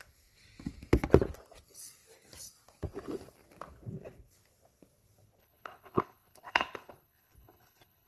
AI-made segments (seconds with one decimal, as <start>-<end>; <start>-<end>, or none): 5.4-8.1